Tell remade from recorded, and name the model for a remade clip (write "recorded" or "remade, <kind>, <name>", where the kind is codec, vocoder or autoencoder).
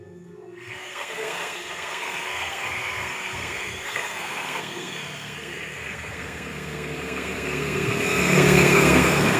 remade, codec, SNAC